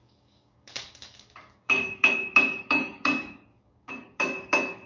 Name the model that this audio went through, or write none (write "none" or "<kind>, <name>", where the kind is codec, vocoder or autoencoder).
codec, DAC